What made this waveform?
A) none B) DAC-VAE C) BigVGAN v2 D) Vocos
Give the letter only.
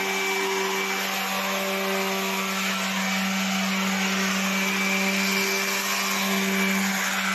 A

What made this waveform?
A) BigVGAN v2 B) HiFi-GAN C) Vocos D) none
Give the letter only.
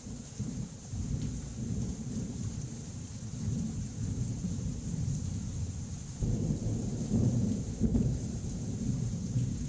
A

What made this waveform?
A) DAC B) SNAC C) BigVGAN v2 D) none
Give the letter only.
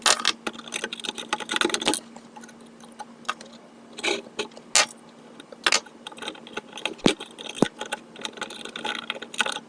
D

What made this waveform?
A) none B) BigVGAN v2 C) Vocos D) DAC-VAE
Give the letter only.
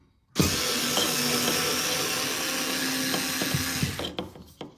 A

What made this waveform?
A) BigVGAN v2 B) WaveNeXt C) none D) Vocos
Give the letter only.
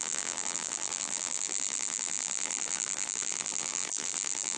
A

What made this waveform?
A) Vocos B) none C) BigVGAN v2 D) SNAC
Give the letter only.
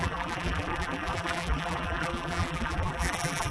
C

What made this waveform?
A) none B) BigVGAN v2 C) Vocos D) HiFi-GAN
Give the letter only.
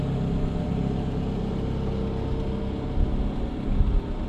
A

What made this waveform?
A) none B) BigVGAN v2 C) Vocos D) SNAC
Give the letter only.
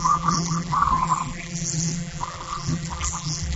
B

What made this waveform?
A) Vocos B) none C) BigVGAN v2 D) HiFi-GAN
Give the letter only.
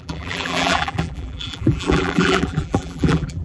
C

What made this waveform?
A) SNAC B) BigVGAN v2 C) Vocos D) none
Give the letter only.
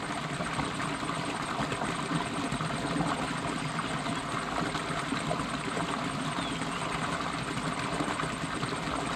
D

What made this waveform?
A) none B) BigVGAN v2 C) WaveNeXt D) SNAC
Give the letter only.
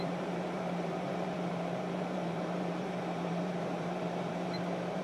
B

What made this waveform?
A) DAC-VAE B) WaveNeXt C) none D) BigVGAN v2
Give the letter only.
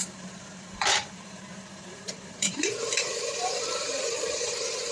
D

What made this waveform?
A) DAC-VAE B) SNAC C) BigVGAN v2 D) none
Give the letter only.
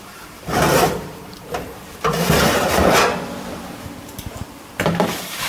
C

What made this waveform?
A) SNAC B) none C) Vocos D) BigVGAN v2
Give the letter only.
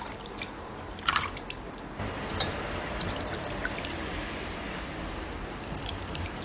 D